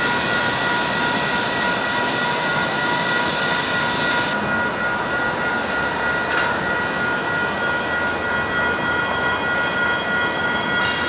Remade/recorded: recorded